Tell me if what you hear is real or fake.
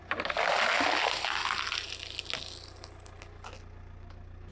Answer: real